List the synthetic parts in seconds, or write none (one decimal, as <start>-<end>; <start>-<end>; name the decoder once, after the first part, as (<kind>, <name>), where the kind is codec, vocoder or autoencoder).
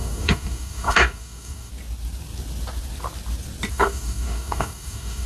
0.0-1.7 (codec, DAC); 3.7-5.3